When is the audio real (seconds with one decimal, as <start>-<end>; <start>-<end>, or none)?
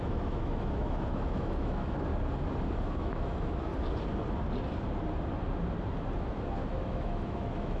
2.1-3.0; 3.7-6.7